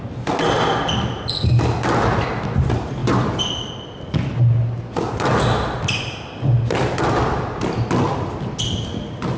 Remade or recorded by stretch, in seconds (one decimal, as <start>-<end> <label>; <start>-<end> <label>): 0.0-3.0 recorded; 3.0-3.7 remade; 3.7-9.4 recorded